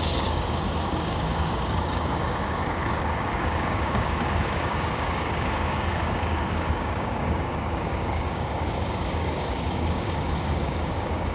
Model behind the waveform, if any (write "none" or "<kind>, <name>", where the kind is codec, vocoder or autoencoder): codec, DAC